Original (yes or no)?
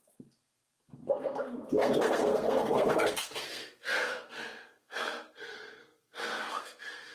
no